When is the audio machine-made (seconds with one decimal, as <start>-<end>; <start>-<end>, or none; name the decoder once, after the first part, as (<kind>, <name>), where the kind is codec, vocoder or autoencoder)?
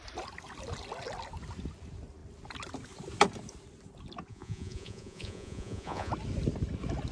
4.3-6.1 (vocoder, Vocos)